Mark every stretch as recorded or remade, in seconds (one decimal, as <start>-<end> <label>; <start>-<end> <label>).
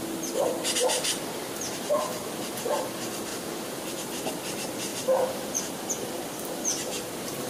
0.0-7.5 remade